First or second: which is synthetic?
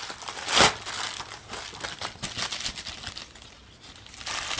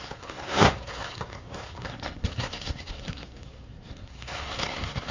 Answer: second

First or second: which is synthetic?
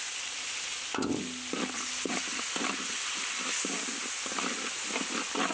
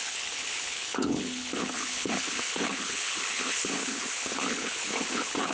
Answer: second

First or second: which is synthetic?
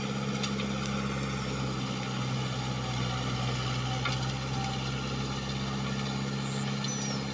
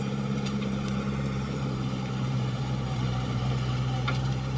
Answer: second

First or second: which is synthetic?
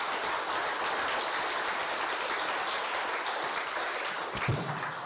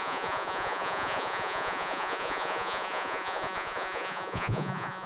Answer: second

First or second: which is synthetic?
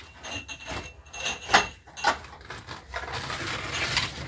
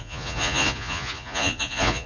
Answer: second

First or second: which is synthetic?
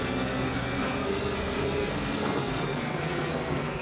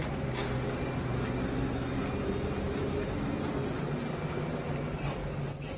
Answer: first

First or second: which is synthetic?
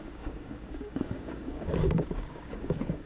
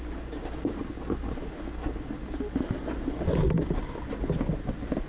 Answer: first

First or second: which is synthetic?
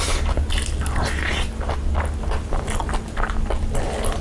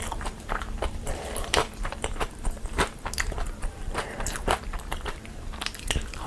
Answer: second